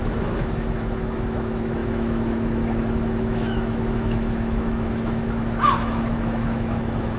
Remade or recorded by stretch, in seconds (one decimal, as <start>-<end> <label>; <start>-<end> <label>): 0.0-7.2 remade